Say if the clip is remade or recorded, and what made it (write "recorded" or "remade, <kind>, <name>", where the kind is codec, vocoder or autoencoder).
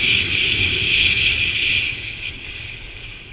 remade, codec, DAC